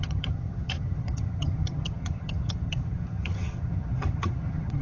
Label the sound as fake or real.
fake